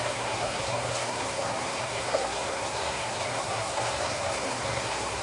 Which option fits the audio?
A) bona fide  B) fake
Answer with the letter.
B